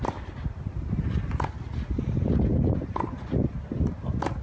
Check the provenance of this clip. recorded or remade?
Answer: recorded